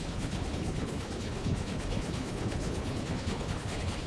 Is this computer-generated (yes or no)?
yes